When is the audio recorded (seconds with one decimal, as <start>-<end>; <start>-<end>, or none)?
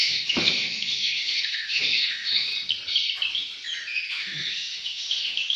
2.5-4.1